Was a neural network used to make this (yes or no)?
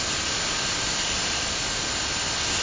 no